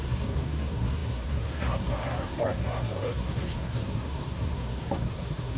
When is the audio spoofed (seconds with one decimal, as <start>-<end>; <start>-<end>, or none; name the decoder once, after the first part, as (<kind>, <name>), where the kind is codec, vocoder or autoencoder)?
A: 0.0-5.6 (codec, SNAC)